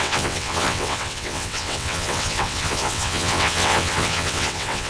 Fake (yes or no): yes